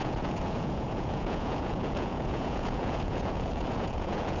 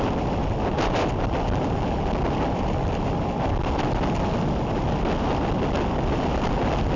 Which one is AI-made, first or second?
first